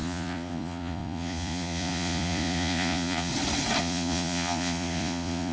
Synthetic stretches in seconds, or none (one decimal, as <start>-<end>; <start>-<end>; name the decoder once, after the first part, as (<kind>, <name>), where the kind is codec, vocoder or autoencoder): 0.0-3.3 (vocoder, Vocos); 3.8-5.5